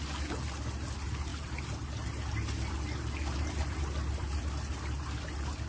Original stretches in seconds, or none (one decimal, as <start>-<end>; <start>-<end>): 0.0-3.6; 4.8-5.7